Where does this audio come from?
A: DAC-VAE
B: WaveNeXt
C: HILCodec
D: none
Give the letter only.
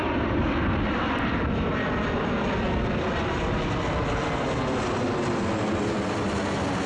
D